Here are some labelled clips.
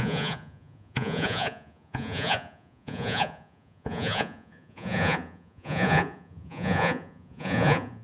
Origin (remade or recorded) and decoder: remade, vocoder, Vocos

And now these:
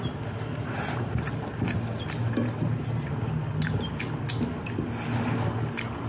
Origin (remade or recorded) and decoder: recorded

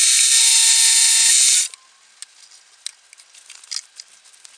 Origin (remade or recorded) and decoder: recorded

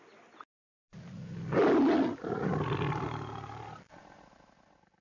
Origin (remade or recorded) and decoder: recorded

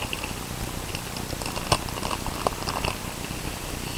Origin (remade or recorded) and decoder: recorded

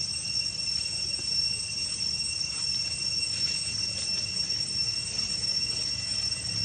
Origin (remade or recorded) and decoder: recorded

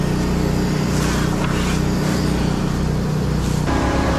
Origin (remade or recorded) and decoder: recorded